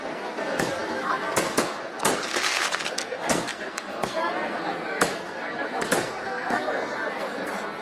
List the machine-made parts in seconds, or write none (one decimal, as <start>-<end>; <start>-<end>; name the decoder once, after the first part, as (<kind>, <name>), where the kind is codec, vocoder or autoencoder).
0.0-7.8 (codec, SNAC)